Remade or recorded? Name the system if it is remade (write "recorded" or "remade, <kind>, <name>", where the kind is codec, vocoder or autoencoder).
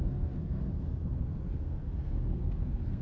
remade, codec, SNAC